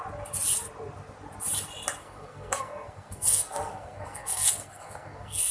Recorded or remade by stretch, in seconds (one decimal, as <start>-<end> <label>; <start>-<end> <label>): 0.0-2.0 recorded; 2.0-5.5 remade